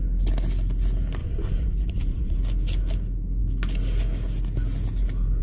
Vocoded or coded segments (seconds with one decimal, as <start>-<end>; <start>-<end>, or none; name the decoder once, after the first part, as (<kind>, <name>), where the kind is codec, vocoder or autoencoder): 1.2-2.4 (vocoder, Vocos)